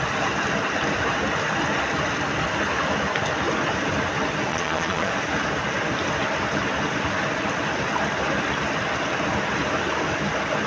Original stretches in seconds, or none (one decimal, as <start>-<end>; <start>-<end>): 0.0-4.5; 5.1-10.7